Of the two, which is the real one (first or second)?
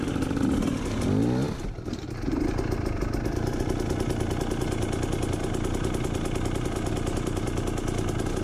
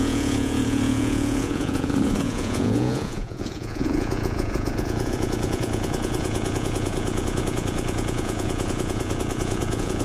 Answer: first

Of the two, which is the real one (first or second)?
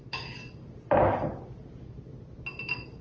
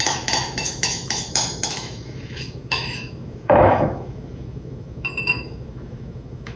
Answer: first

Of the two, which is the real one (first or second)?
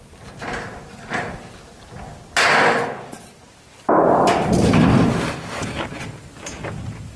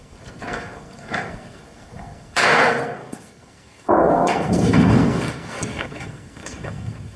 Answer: first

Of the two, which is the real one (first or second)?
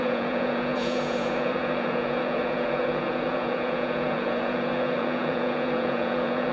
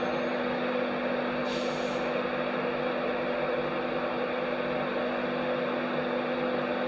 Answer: second